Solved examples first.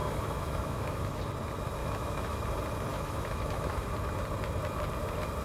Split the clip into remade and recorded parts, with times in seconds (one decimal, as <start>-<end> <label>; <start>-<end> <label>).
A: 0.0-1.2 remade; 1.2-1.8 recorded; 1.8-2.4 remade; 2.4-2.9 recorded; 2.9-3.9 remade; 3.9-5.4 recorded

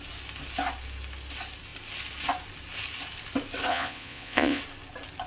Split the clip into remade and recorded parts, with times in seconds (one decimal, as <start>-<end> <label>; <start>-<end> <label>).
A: 0.0-3.7 recorded; 3.7-4.6 remade; 4.6-5.3 recorded

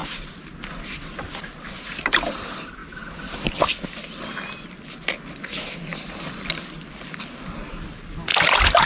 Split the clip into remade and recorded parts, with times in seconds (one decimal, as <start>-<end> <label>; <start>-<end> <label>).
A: 0.0-2.3 recorded; 2.3-2.8 remade; 2.8-5.5 recorded; 5.5-8.3 remade; 8.3-8.9 recorded